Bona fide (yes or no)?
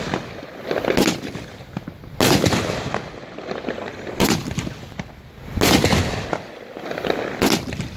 yes